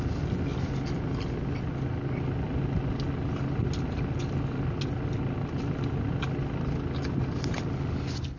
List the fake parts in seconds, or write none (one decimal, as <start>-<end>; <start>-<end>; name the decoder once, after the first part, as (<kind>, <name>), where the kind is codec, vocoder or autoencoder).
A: none